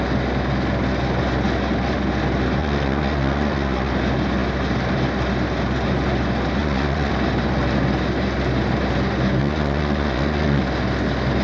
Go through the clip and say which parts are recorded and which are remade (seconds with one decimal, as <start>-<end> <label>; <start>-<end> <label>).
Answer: 0.0-2.6 recorded; 2.6-3.9 remade; 3.9-6.6 recorded; 6.6-7.1 remade; 7.1-9.4 recorded; 9.4-10.6 remade; 10.6-11.4 recorded